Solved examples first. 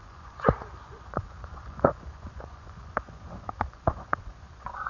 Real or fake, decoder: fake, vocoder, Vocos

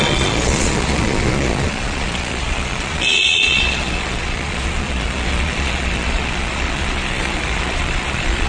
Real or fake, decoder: fake, vocoder, Vocos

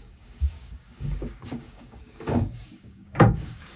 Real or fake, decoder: fake, codec, DAC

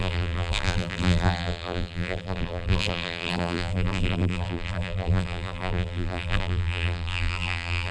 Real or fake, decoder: fake, vocoder, BigVGAN v2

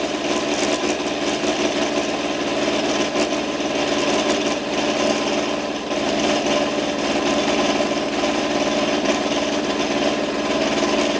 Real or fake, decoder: real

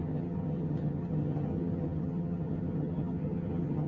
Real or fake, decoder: fake, vocoder, HiFi-GAN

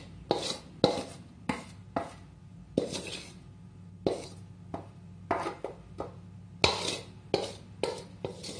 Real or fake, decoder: real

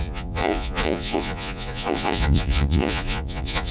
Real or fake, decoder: fake, vocoder, Vocos